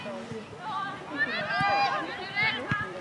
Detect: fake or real real